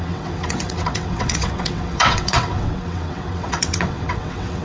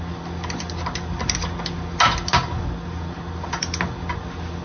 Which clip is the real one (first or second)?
second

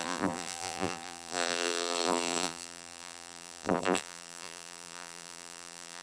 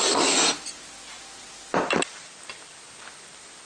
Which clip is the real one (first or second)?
second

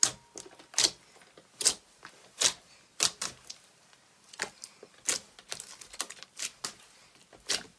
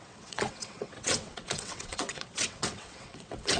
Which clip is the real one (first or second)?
first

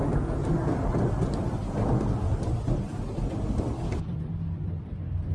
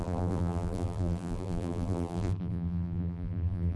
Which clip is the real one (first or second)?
first